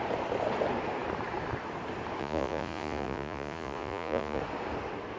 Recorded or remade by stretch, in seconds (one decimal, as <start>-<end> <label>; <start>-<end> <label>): 0.0-2.2 recorded; 2.2-4.4 remade; 4.4-5.2 recorded